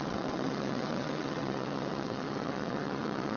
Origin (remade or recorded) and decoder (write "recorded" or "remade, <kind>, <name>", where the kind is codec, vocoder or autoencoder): remade, vocoder, WaveNeXt